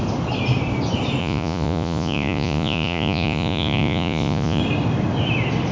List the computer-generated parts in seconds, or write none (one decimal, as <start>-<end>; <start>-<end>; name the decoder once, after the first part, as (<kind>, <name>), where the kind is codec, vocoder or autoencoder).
1.2-4.6 (vocoder, Vocos)